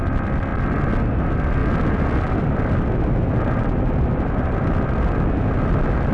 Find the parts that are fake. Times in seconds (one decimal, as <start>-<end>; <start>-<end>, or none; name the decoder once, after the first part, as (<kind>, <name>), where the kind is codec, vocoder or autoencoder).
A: none